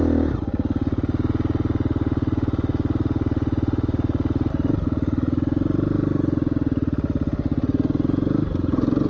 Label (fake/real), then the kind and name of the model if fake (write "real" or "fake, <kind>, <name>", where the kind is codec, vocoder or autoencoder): real